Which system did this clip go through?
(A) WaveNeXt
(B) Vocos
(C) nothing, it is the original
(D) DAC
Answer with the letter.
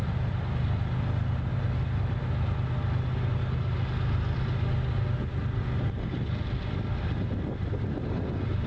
C